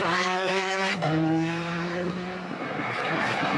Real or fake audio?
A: fake